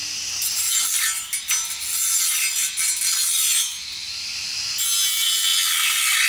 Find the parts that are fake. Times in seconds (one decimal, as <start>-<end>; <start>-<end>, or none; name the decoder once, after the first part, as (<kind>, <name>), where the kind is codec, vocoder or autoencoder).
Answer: none